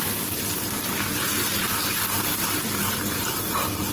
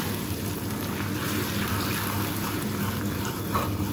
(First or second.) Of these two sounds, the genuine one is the second